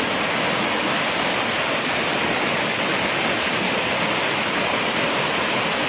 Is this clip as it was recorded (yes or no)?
yes